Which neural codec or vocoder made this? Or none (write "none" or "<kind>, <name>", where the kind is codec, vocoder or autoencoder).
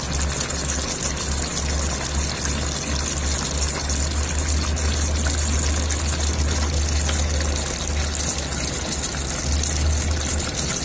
none